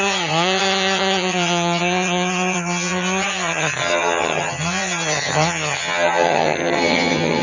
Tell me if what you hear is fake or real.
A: fake